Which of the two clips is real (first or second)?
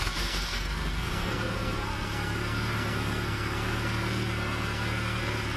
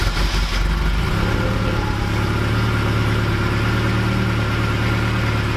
second